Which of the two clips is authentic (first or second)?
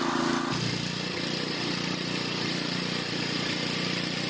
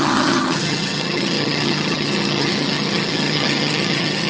first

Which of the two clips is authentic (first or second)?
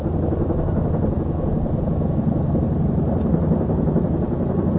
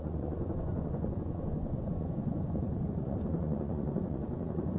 first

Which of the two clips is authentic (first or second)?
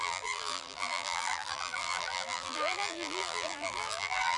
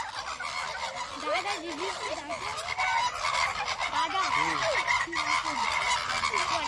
second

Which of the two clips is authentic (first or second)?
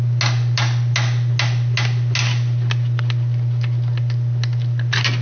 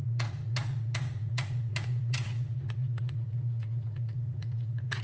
first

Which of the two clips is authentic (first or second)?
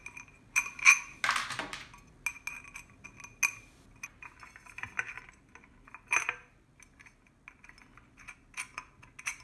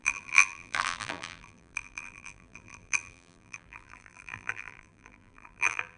first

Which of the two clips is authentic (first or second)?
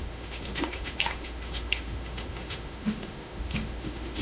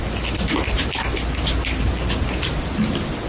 second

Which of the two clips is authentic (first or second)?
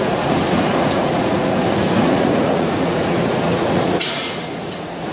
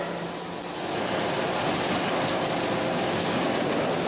second